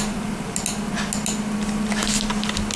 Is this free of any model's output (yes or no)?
yes